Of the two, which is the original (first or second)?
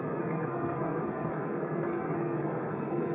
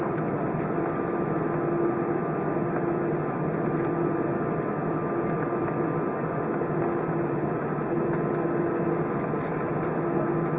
second